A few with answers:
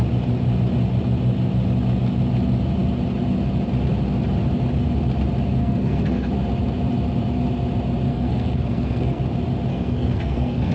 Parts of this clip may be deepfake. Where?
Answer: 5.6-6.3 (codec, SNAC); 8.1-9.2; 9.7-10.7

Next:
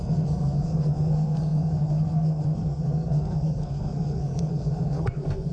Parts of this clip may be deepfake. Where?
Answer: 0.0-5.5 (codec, SNAC)